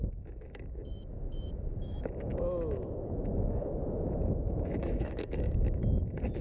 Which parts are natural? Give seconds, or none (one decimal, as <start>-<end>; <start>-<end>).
none